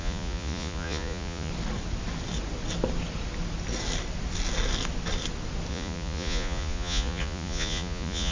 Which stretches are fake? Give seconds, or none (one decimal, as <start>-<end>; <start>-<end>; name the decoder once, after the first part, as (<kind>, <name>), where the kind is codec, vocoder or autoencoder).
0.0-1.5 (vocoder, Vocos); 5.7-8.3